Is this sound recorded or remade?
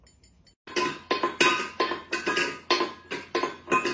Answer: recorded